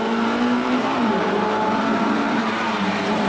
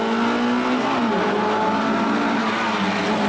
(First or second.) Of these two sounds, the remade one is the first